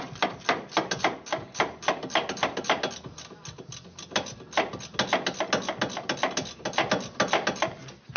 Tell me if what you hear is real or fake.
real